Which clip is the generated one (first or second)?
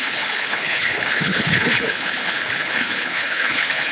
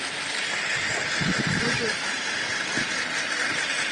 first